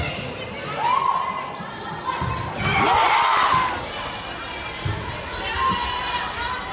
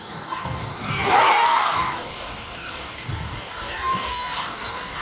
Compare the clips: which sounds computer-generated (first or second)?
second